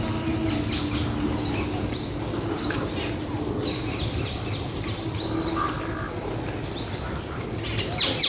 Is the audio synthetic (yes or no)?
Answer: no